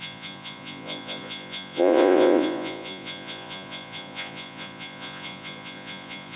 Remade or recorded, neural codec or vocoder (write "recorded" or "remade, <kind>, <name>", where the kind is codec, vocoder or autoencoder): remade, vocoder, Vocos